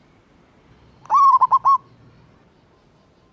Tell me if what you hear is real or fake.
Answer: real